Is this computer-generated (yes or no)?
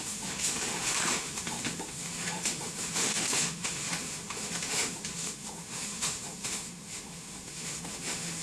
yes